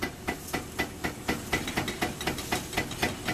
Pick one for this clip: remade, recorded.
recorded